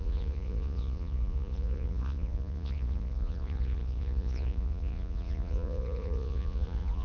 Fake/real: fake